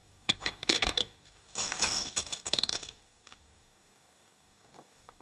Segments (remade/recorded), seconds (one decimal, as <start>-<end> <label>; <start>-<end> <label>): 0.0-5.2 remade